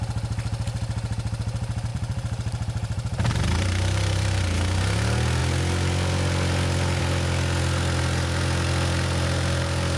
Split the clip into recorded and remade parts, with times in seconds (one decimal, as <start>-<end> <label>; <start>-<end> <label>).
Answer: 0.0-1.9 recorded; 1.9-4.8 remade; 4.8-10.0 recorded